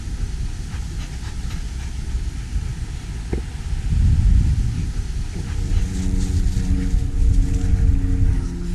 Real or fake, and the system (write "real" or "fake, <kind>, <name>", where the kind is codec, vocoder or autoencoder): real